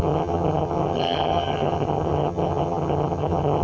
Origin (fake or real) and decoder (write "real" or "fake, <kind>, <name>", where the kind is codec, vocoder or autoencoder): fake, vocoder, HiFi-GAN